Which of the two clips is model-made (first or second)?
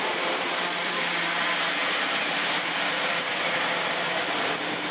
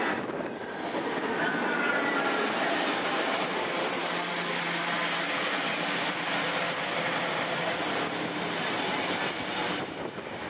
first